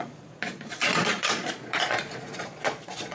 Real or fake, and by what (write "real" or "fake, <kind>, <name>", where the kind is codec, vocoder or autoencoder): fake, vocoder, Vocos